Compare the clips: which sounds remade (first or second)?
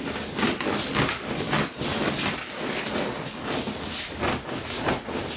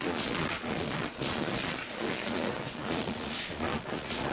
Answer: second